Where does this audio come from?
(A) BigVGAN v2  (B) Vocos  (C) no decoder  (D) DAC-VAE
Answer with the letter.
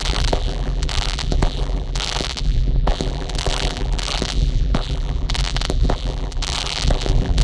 A